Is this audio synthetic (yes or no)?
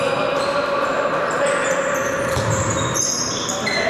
no